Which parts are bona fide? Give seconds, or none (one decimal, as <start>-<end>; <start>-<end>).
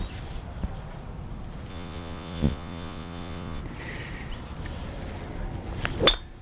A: 0.0-1.7; 3.6-6.4